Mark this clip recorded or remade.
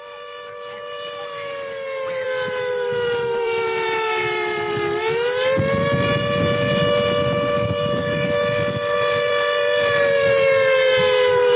remade